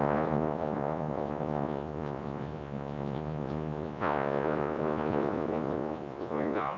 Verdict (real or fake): fake